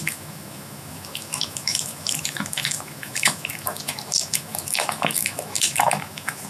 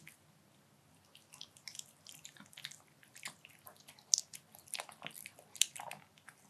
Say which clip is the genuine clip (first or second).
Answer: second